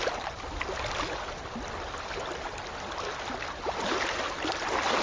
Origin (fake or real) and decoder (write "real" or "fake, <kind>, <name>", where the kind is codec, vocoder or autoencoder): real